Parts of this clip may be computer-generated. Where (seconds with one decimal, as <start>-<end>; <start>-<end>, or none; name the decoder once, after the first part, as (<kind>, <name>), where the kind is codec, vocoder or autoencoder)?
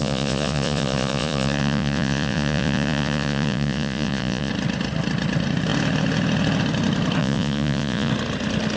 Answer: 0.0-4.5 (vocoder, Vocos); 7.2-8.1